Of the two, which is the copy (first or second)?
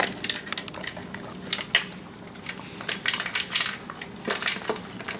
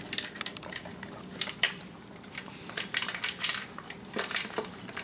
second